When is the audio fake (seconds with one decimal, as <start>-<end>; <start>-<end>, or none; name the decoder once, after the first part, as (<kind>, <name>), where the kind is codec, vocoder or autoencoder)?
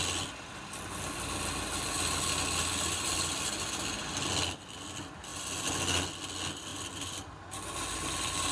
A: none